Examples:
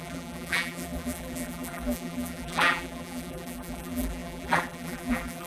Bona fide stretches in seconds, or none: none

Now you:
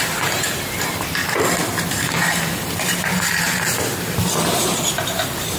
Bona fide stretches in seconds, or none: 0.0-5.6

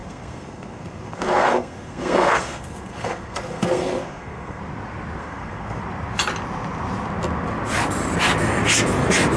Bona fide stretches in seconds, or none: 4.6-5.2; 5.8-9.4

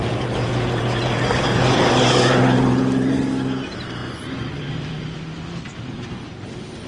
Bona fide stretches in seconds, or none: 0.0-4.0; 4.6-6.9

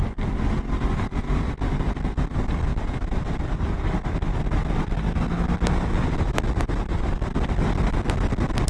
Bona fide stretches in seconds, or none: 0.0-8.7

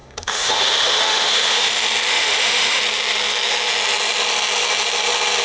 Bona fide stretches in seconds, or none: 1.7-2.1; 2.8-5.4

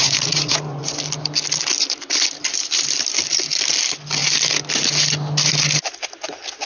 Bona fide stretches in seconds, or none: 0.9-6.7

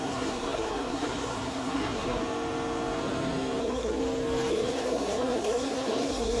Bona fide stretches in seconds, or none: 2.2-3.6; 4.0-4.5